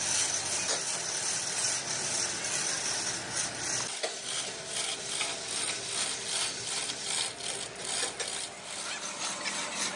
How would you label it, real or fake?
real